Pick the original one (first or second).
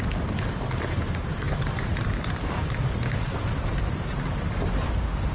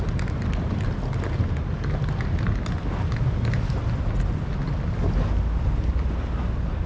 second